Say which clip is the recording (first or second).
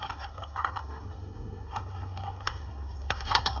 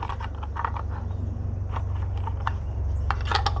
second